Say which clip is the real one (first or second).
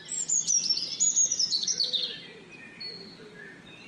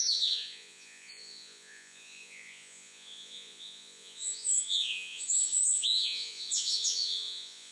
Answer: first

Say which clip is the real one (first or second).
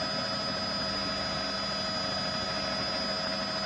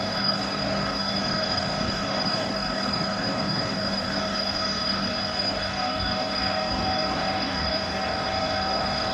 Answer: first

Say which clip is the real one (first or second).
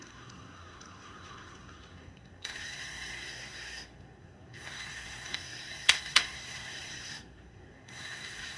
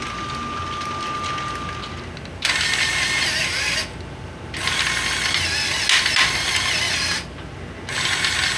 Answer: second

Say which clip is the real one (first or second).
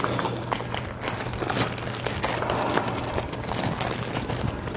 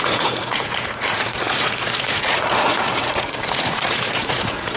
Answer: first